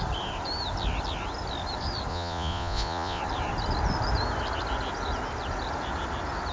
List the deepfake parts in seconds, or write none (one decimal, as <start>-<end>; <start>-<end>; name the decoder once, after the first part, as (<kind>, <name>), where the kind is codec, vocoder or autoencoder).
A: 2.1-3.2 (vocoder, Vocos)